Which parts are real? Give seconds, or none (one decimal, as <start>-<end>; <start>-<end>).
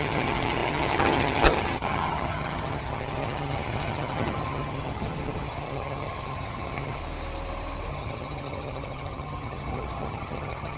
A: 7.0-7.9